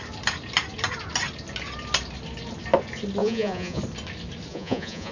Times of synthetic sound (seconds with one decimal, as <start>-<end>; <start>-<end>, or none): 3.2-3.8; 4.5-5.1